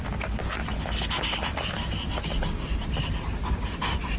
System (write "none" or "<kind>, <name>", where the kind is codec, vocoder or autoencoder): none